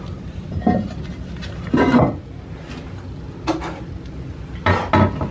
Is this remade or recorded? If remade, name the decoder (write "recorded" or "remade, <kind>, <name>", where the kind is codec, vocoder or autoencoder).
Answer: recorded